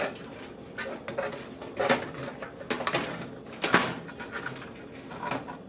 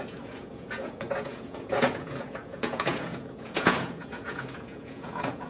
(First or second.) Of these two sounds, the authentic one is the first